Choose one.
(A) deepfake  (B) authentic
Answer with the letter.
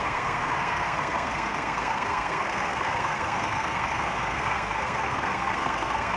A